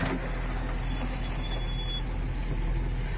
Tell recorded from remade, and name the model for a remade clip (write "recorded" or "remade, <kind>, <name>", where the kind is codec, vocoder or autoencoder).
recorded